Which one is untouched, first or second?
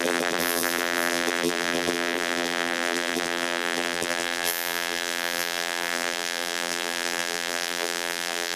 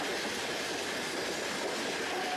second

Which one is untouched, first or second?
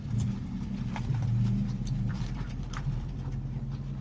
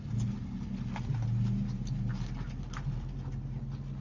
second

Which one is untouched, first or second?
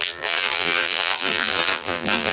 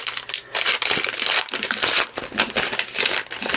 second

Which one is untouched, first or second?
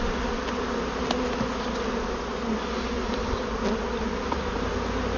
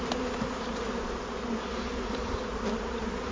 first